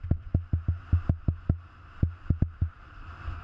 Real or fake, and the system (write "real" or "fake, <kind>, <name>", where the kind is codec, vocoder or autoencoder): real